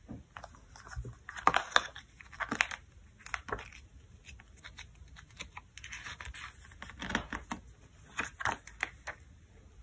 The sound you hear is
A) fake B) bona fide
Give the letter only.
B